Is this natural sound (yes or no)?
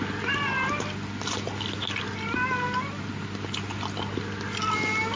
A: yes